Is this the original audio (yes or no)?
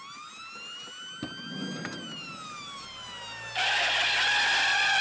yes